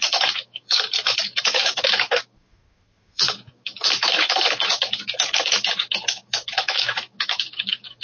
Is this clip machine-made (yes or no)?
yes